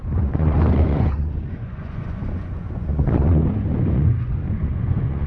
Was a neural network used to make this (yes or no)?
yes